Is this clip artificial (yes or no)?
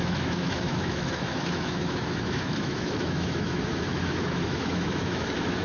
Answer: yes